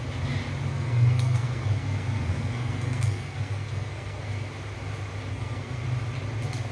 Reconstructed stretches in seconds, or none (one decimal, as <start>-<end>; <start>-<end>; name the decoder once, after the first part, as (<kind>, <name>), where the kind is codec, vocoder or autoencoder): 0.7-4.5 (codec, SNAC); 5.3-5.8